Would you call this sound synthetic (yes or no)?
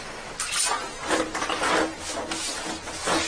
no